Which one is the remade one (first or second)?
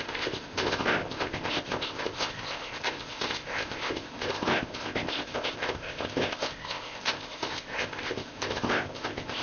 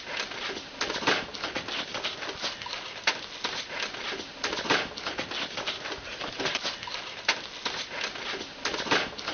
first